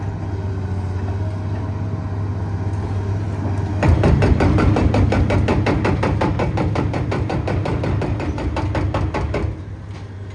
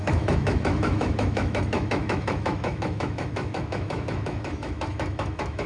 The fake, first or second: second